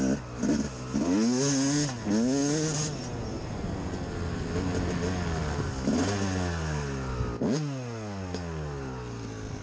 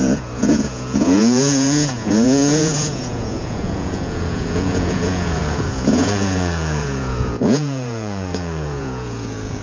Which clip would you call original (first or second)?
first